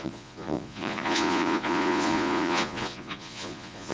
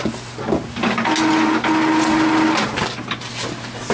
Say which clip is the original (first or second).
second